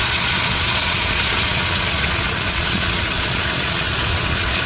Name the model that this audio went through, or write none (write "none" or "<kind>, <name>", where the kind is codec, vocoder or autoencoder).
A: vocoder, Vocos